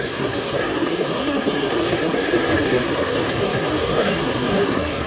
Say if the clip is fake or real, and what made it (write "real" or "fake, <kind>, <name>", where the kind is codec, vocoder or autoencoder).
fake, codec, SNAC